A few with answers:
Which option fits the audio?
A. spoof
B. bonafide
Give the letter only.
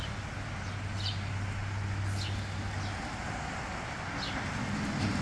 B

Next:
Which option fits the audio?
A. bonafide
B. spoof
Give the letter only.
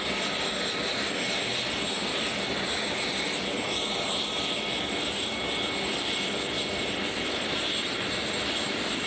A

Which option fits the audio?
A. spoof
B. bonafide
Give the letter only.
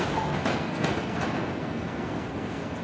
A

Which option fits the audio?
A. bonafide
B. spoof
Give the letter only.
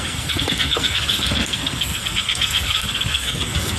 B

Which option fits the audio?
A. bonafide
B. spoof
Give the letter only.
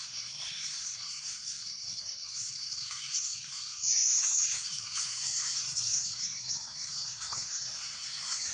B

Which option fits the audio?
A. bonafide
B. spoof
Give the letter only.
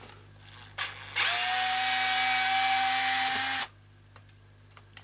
A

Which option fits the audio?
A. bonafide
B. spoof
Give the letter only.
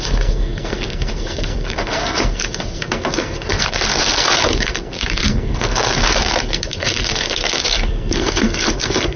B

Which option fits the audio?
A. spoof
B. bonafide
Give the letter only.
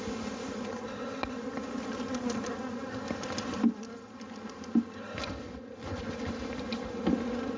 B